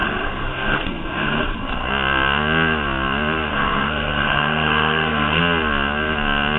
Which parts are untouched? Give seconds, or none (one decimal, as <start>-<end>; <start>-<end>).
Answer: 1.9-3.5; 5.4-6.6

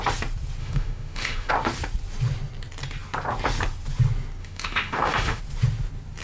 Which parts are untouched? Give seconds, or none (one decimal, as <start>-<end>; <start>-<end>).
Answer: 0.0-0.6; 1.5-4.4; 5.4-6.2

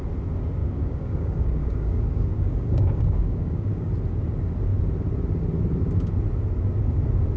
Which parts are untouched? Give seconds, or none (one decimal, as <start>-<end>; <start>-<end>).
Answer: 0.0-0.6; 3.9-7.4